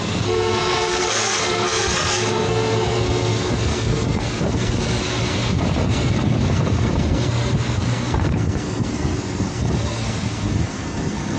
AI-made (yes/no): yes